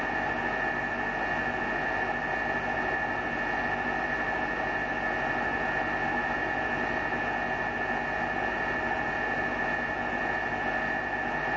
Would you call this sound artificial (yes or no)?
no